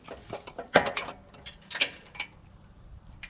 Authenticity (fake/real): real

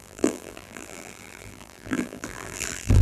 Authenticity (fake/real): fake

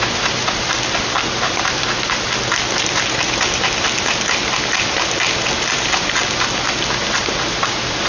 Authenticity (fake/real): real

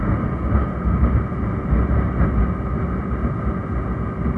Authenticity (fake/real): real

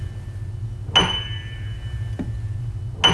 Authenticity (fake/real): real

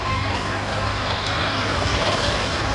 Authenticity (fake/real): fake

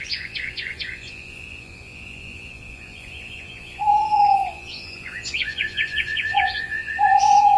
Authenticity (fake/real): fake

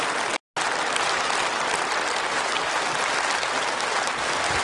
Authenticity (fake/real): real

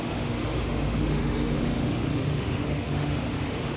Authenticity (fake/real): fake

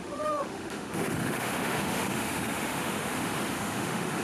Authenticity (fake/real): fake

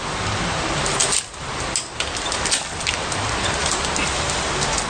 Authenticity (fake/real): real